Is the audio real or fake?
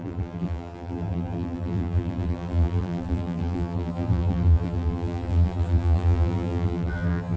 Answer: fake